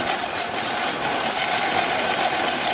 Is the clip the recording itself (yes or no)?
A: no